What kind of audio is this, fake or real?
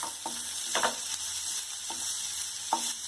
real